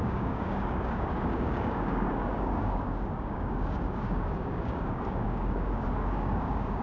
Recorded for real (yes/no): no